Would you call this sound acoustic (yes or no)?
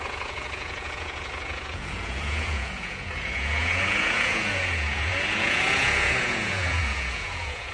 no